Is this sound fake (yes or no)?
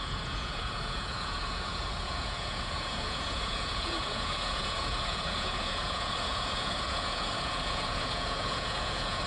yes